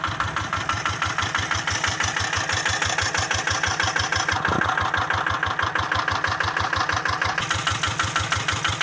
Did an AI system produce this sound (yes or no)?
no